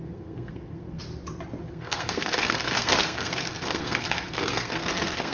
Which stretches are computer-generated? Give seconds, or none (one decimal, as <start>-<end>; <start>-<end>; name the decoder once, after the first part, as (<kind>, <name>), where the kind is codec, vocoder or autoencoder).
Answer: 0.0-1.0 (codec, SNAC); 1.6-5.3